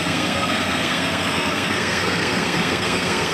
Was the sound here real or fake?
fake